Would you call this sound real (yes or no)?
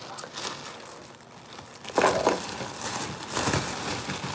yes